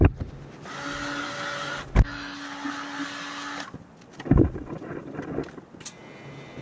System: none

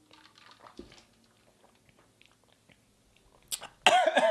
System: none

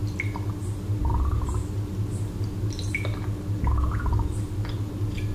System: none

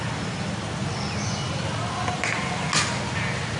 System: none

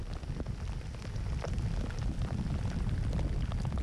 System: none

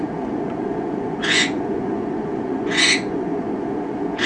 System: vocoder, Vocos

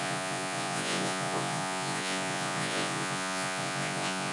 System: vocoder, Vocos